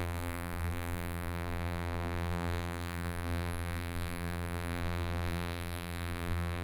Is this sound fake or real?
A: fake